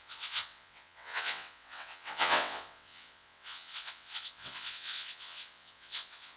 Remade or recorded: remade